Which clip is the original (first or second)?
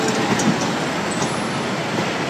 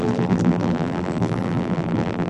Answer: first